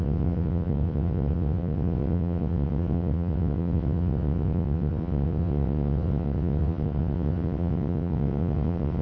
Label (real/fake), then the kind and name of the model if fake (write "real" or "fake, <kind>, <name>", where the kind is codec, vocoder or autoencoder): fake, vocoder, WaveNeXt